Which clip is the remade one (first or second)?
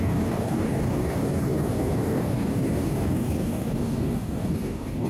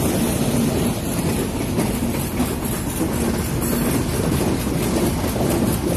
first